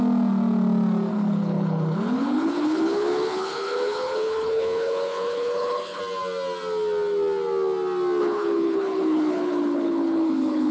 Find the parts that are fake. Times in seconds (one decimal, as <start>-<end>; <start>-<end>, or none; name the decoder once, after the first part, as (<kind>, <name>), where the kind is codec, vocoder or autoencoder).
1.1-6.0 (codec, HILCodec); 8.2-10.7